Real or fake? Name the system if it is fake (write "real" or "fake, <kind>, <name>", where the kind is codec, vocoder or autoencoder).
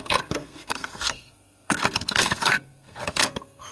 fake, codec, SNAC